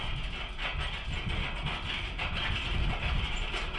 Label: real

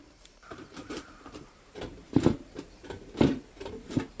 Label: fake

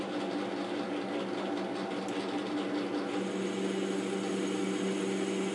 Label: real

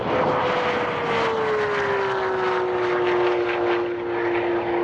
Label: real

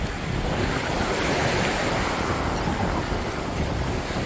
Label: real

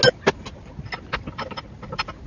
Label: real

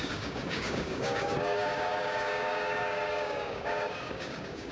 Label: fake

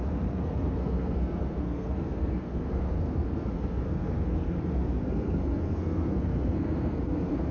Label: fake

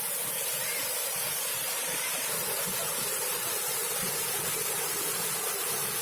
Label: fake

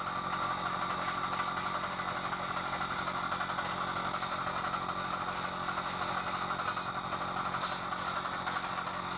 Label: real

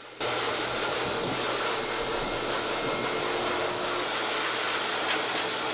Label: real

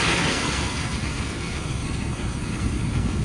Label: fake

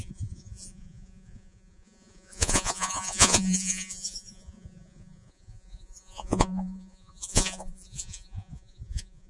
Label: fake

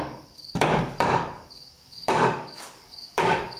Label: fake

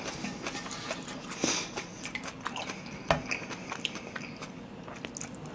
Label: real